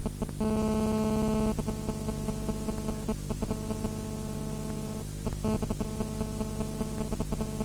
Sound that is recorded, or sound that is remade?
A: recorded